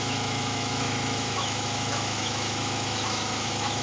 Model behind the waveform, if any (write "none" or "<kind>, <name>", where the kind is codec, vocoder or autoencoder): autoencoder, DAC-VAE